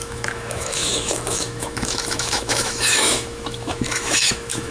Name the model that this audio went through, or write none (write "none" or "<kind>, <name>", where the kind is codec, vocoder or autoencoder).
autoencoder, DAC-VAE